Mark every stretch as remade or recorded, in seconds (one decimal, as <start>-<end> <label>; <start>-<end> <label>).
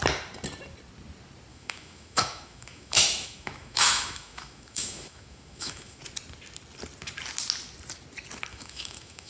0.0-1.5 recorded; 1.5-6.0 remade; 6.0-8.5 recorded; 8.5-9.3 remade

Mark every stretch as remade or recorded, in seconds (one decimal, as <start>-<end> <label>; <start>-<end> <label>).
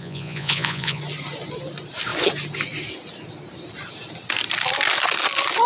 0.0-1.0 remade; 1.0-5.7 recorded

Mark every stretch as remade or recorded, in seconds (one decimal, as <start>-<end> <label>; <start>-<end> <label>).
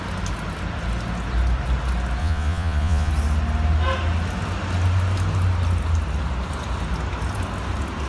0.0-2.2 recorded; 2.2-3.1 remade; 3.1-8.1 recorded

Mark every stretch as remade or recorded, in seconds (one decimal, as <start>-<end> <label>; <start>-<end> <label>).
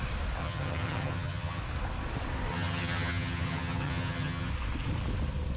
0.0-0.4 recorded; 0.4-1.6 remade; 1.6-2.5 recorded; 2.5-4.5 remade; 4.5-5.6 recorded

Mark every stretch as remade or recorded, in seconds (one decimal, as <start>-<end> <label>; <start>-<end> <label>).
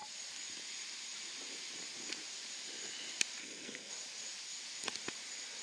0.0-3.4 recorded; 3.4-3.9 remade; 3.9-5.6 recorded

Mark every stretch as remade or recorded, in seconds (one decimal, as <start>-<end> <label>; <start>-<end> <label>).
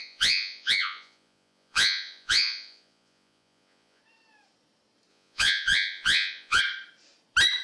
0.0-4.0 remade; 4.0-5.1 recorded; 5.1-6.6 remade; 6.6-7.6 recorded